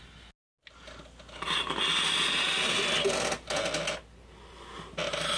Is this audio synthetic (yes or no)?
no